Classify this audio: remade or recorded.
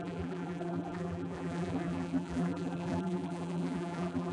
remade